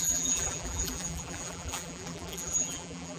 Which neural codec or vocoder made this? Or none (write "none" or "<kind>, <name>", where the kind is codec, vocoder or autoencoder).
vocoder, BigVGAN v2